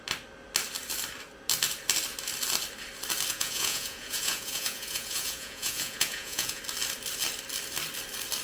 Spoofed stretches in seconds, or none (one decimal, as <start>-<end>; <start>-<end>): 3.3-6.6